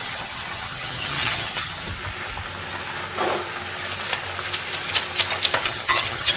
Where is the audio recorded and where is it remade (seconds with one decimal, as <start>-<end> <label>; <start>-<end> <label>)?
0.0-1.9 remade; 1.9-5.6 recorded; 5.6-6.4 remade